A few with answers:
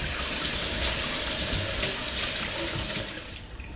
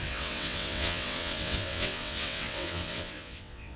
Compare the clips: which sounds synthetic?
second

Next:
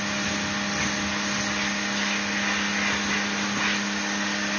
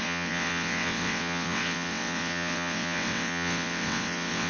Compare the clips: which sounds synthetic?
second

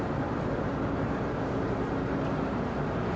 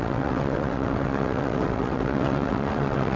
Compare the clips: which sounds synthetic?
second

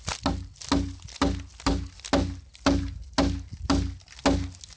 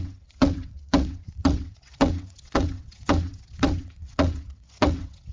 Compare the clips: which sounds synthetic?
second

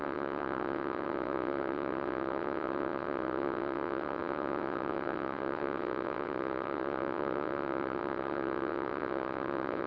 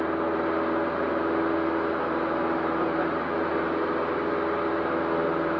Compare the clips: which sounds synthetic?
first